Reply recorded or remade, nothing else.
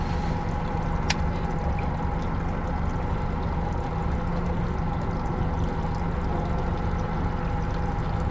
recorded